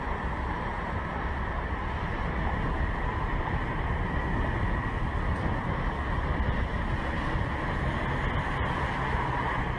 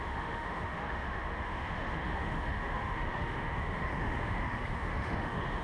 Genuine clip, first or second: first